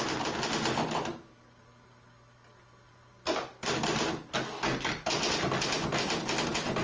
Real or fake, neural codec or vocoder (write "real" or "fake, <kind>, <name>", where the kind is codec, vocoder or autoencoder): real